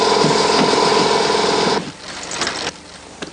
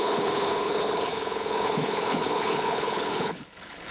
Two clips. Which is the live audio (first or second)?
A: first